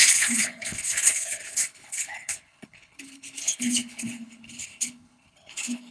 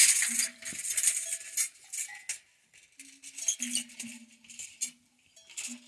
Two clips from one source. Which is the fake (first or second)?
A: first